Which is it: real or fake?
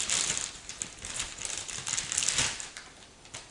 real